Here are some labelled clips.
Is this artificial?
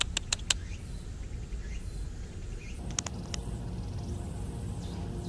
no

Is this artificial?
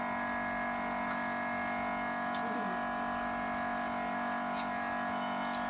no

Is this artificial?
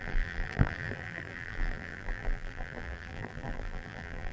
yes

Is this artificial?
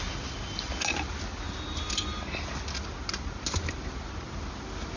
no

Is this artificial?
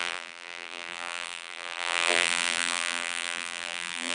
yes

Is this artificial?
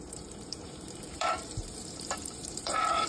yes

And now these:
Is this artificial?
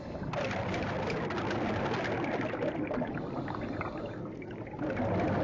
no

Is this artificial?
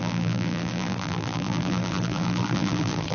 yes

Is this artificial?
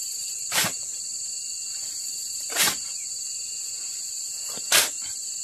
yes